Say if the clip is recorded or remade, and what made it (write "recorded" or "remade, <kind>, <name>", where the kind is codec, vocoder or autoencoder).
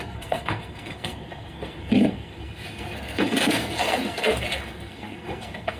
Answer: remade, codec, SNAC